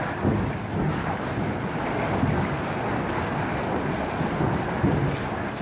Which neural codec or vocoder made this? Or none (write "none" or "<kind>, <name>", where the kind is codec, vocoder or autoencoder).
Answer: none